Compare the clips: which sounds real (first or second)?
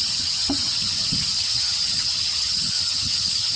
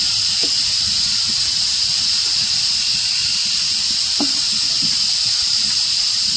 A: second